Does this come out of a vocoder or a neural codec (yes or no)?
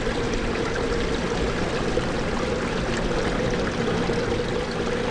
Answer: no